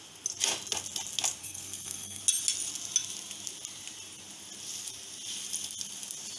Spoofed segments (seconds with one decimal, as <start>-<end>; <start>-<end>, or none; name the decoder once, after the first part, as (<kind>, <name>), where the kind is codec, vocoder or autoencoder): 1.4-2.2 (codec, SNAC)